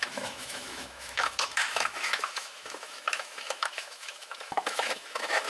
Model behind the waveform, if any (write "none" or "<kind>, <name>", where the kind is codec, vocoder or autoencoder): autoencoder, DAC-VAE